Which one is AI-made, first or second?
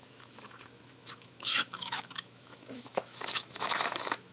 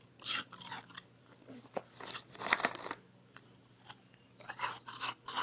first